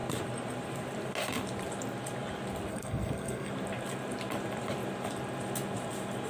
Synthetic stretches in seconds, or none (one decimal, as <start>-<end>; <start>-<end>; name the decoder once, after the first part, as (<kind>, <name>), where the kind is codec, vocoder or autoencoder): 2.7-3.5 (codec, SNAC)